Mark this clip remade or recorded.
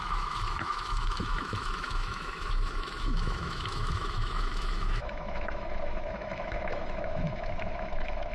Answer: remade